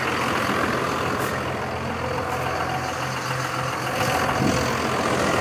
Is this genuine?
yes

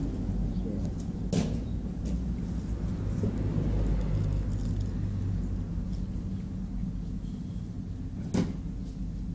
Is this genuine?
yes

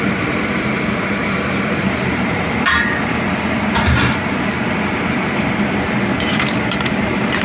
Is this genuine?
no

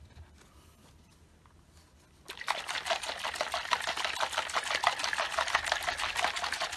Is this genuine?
yes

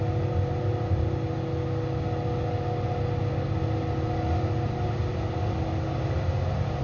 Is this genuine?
yes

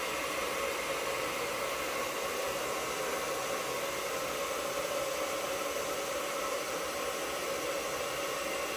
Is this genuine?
yes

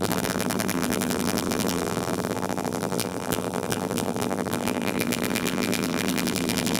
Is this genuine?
no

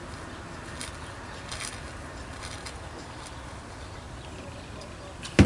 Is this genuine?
yes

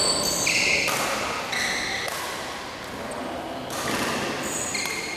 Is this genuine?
yes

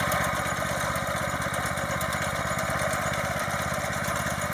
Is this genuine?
no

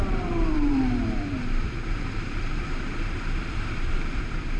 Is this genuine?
no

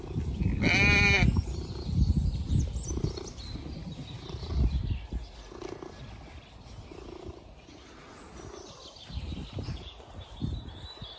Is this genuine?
yes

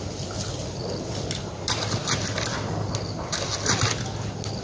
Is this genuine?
yes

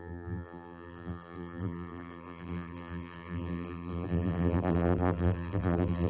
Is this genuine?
no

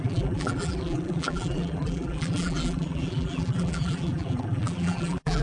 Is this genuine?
no